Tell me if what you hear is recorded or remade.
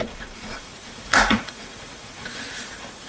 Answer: remade